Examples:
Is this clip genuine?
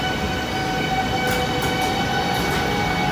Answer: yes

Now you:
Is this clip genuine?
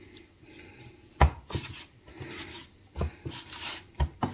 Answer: yes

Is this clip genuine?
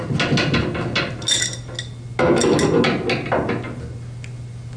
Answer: yes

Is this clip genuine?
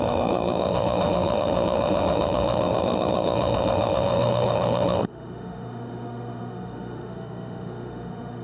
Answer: no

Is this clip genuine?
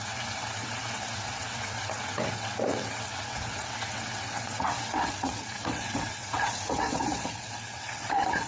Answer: no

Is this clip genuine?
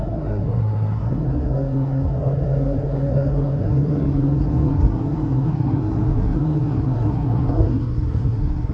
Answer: no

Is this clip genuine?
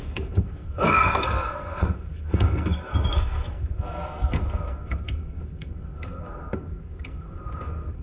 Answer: no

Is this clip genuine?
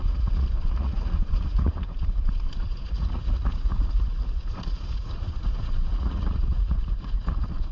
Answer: no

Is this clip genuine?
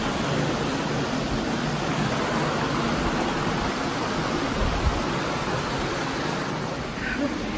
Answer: yes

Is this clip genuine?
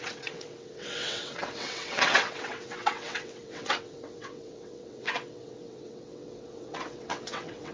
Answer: no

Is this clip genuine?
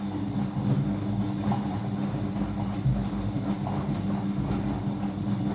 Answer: yes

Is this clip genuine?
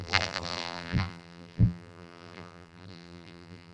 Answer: no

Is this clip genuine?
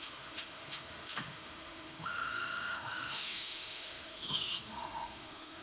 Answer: no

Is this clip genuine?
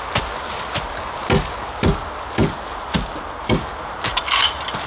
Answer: yes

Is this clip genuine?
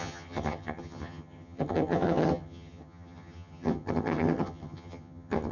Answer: no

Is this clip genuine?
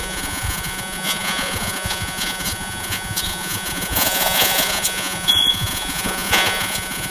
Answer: no